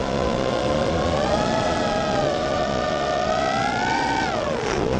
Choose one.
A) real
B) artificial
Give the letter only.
B